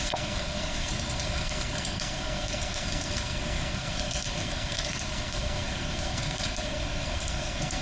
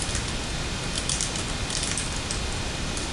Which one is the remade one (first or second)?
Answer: first